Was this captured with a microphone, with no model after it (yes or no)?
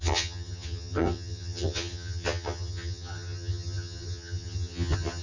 no